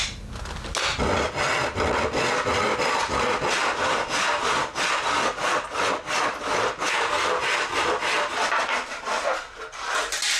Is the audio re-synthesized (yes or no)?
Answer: no